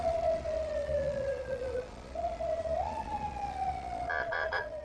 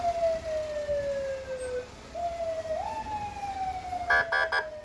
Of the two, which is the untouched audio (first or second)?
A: second